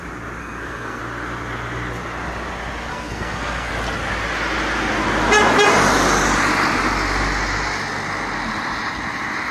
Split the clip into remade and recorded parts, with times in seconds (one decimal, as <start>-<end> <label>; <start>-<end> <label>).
0.0-0.4 recorded; 0.4-1.0 remade; 1.0-2.9 recorded; 2.9-3.7 remade; 3.7-9.5 recorded